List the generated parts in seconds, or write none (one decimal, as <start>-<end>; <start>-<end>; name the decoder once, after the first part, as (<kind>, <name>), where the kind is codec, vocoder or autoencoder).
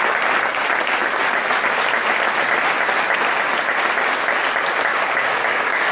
4.9-5.9 (codec, DAC)